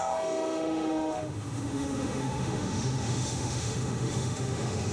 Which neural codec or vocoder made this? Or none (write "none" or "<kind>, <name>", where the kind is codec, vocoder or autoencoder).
autoencoder, DAC-VAE